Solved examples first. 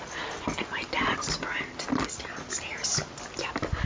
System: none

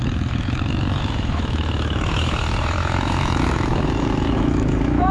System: autoencoder, DAC-VAE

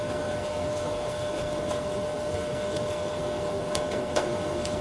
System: codec, SNAC